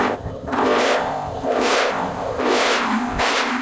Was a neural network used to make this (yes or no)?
yes